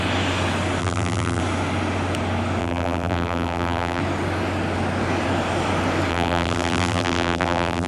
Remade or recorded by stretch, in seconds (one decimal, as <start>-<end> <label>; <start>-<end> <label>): 0.0-0.8 recorded; 0.8-1.4 remade; 1.4-2.6 recorded; 2.6-4.0 remade; 4.0-6.1 recorded; 6.1-7.9 remade